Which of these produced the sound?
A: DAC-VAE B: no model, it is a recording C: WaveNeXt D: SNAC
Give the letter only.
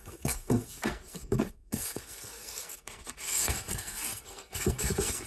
D